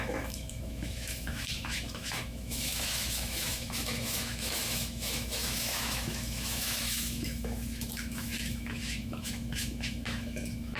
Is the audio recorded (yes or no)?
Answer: no